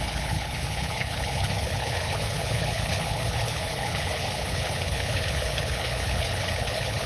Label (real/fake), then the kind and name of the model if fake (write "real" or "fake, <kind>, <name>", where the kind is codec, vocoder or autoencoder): fake, codec, HILCodec